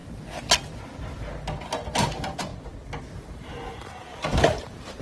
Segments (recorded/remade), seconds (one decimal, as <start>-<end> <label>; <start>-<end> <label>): 0.0-1.9 recorded; 1.9-2.5 remade; 2.5-3.0 recorded; 3.0-5.0 remade